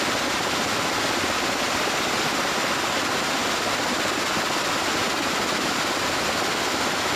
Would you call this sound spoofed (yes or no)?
no